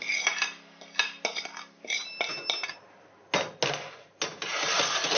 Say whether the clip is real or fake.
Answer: real